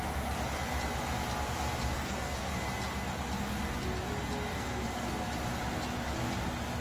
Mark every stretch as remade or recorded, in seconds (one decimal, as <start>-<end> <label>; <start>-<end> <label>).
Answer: 0.0-1.9 recorded; 1.9-2.5 remade; 2.5-4.5 recorded; 4.5-5.1 remade; 5.1-6.8 recorded

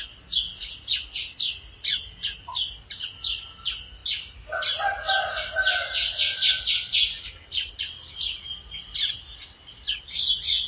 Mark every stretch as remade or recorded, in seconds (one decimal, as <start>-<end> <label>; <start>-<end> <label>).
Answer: 0.0-10.7 recorded

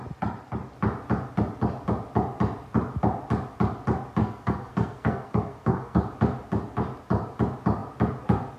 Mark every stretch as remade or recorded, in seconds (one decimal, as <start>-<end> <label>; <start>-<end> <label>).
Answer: 0.0-4.2 recorded; 4.2-6.0 remade; 6.0-8.6 recorded

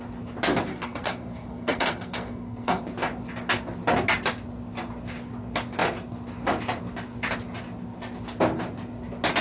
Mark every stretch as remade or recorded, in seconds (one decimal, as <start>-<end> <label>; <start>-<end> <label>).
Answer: 0.0-0.7 recorded; 0.7-2.8 remade; 2.8-9.4 recorded

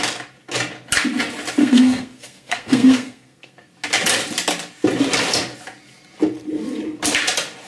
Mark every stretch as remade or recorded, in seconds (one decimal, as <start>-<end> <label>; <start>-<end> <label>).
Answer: 0.0-1.6 recorded; 1.6-3.7 remade; 3.7-7.7 recorded

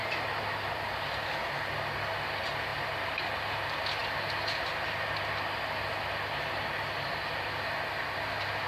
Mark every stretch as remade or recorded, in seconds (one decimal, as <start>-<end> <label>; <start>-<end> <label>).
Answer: 0.0-8.7 recorded

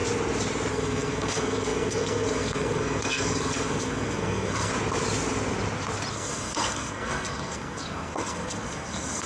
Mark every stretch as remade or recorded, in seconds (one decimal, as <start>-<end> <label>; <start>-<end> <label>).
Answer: 0.0-0.7 recorded; 0.7-4.7 remade; 4.7-6.1 recorded; 6.1-9.3 remade

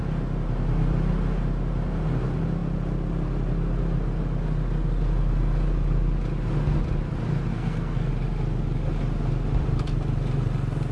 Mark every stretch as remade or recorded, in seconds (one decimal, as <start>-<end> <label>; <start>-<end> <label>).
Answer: 0.0-7.5 recorded; 7.5-8.1 remade; 8.1-10.9 recorded